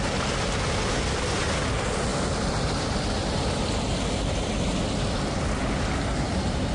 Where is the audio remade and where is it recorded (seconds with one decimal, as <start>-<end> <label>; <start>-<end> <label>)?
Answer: 0.0-6.7 recorded

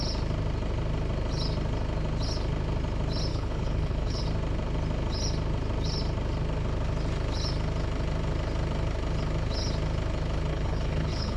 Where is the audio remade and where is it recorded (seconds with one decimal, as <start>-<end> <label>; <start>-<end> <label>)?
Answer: 0.0-3.3 recorded; 3.3-4.2 remade; 4.2-10.5 recorded; 10.5-11.4 remade

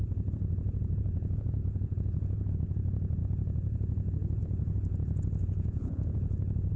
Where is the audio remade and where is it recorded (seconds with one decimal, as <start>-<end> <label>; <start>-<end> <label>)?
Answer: 0.0-6.8 remade

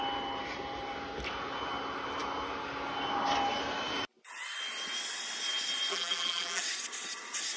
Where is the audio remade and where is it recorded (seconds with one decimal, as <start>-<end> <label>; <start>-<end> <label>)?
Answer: 0.0-5.9 recorded; 5.9-6.6 remade; 6.6-7.6 recorded

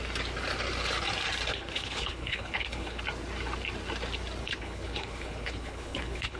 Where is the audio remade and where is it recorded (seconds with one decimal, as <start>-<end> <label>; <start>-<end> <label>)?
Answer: 0.0-1.5 recorded; 1.5-3.0 remade; 3.0-4.4 recorded; 4.4-6.4 remade

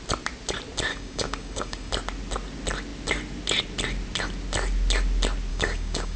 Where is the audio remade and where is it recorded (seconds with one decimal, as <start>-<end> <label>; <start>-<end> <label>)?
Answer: 0.0-0.9 recorded; 0.9-1.9 remade; 1.9-5.5 recorded; 5.5-6.2 remade